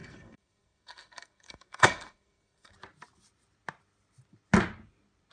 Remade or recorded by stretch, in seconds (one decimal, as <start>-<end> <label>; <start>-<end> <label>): 0.0-2.7 remade; 2.7-5.3 recorded